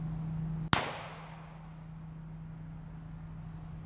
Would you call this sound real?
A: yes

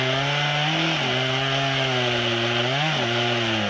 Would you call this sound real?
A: yes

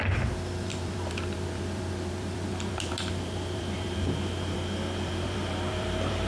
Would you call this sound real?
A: no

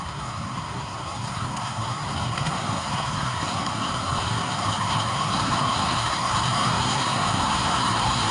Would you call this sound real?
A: no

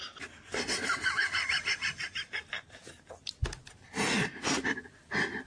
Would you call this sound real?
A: yes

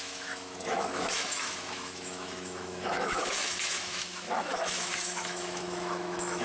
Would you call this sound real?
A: no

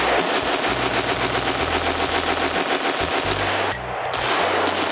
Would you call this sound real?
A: yes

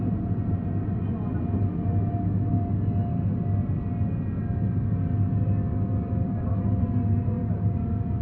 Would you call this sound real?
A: yes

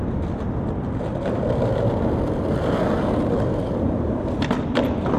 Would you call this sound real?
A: yes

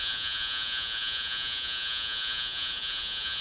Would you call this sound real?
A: no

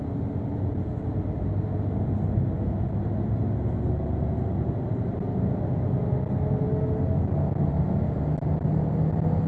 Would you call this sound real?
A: yes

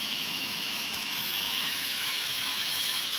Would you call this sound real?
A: no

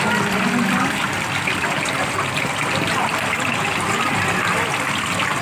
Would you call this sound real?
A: yes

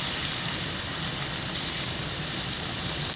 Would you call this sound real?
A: yes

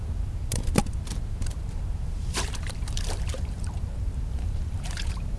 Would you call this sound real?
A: no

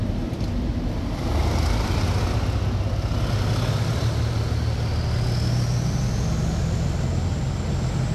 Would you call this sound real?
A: yes